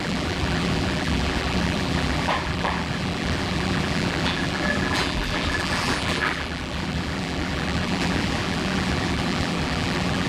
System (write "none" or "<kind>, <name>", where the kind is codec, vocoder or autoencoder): vocoder, BigVGAN v2